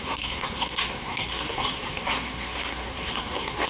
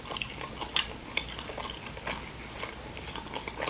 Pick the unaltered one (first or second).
second